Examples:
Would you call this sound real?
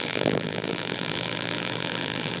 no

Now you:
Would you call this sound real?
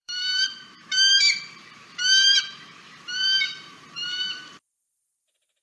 no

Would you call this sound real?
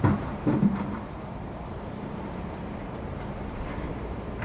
no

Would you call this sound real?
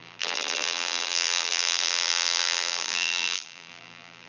no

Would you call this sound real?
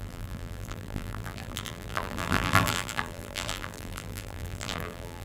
no